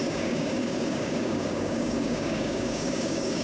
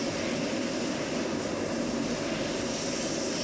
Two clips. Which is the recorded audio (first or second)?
second